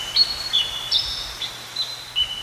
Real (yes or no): yes